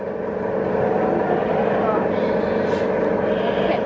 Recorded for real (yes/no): yes